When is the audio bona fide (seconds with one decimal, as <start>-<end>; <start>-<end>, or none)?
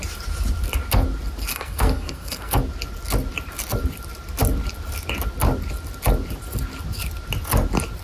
0.0-1.5; 2.6-8.0